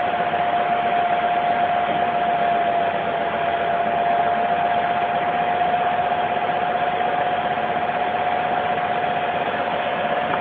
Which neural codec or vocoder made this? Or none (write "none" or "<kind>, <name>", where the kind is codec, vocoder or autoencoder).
none